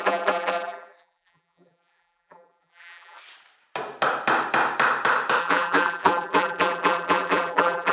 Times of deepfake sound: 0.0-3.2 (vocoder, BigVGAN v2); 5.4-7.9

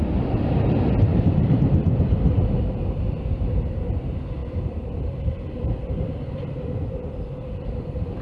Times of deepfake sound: 0.0-8.2 (vocoder, BigVGAN v2)

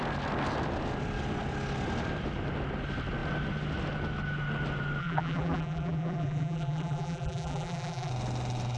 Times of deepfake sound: 5.0-8.1 (vocoder, BigVGAN v2)